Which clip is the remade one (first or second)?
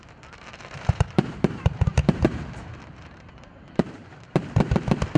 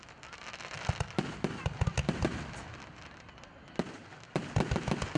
first